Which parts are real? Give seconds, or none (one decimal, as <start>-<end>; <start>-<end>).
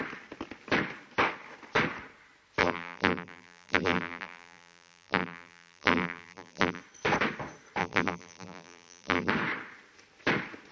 0.0-2.6; 6.8-7.8; 9.3-10.7